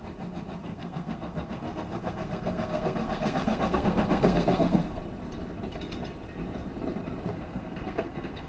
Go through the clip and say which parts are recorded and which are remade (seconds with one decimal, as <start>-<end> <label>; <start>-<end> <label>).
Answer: 0.0-0.6 recorded; 0.6-5.0 remade; 5.0-7.3 recorded; 7.3-8.5 remade